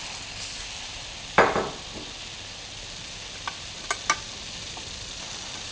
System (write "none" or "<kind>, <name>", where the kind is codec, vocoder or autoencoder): none